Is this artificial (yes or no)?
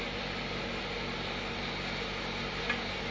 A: no